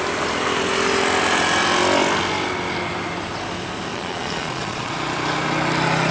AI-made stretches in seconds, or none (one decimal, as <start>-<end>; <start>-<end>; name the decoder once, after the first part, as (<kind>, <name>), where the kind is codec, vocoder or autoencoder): 3.9-4.9 (vocoder, Vocos)